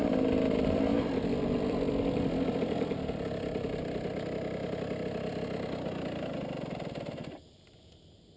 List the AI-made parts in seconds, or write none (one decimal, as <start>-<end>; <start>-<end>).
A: none